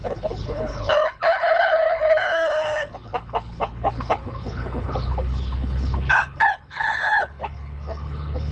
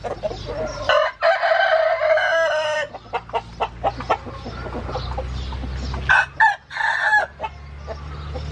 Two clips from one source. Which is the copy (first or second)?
first